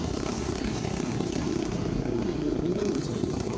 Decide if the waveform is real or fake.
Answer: fake